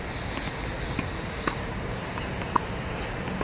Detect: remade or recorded recorded